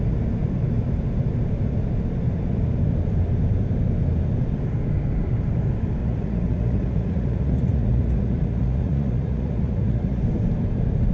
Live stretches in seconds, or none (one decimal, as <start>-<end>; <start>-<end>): 0.0-6.0; 10.2-11.1